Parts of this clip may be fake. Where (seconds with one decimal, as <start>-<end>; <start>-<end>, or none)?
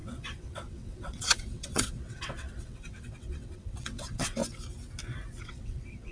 0.0-4.4; 5.4-6.1